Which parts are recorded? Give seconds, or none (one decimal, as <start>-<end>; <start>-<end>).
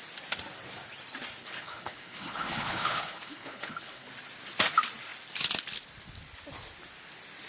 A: 0.0-1.4; 4.1-7.5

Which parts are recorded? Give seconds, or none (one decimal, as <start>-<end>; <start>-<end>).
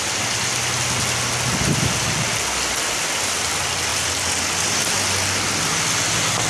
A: 3.9-4.4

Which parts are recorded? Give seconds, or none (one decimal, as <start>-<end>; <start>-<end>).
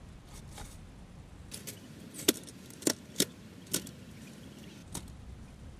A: 0.0-5.8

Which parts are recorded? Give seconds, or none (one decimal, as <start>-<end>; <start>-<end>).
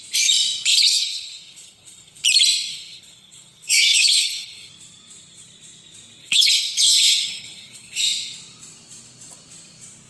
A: 0.0-0.7; 2.2-2.7; 4.7-6.2; 8.0-10.1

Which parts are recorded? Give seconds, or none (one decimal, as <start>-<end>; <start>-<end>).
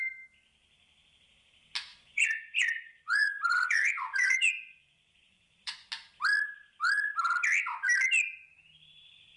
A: 0.0-1.9; 5.9-9.4